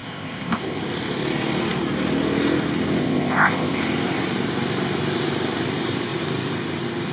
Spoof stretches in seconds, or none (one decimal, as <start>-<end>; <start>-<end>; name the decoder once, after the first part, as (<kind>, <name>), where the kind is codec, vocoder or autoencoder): 0.0-0.8 (codec, ZipCodec); 3.0-3.8

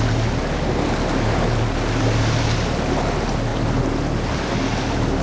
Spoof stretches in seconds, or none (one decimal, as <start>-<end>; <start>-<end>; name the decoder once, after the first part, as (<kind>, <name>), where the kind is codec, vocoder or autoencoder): none

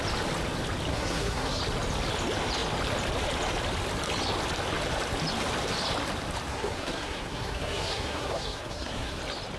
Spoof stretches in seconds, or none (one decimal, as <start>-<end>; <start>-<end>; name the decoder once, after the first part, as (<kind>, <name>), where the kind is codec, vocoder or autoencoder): 0.9-1.6 (codec, SNAC); 6.5-9.2

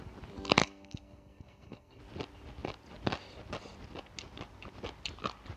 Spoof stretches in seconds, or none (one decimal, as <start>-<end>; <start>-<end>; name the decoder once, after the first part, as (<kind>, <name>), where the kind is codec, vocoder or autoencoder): 0.6-2.0 (codec, SNAC)

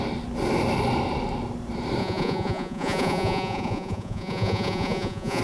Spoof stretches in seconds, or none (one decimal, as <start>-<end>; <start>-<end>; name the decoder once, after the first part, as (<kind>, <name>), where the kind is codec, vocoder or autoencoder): 2.0-5.4 (vocoder, Vocos)

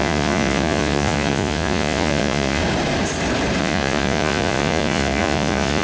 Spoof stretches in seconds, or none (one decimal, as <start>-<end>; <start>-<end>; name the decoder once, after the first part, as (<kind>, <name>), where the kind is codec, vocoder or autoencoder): 0.0-2.6 (vocoder, Vocos); 3.6-5.8